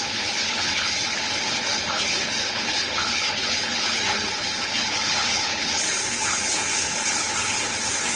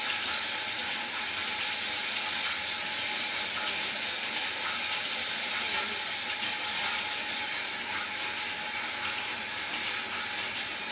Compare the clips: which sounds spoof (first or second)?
first